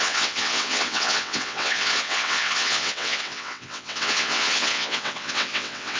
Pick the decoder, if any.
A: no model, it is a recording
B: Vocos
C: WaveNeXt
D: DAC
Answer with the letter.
C